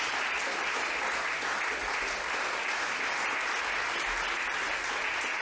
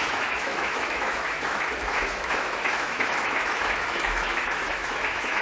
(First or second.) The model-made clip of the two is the second